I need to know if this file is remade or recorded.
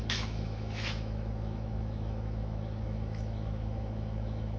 remade